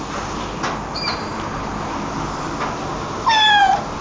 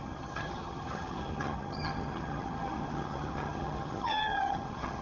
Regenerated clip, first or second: second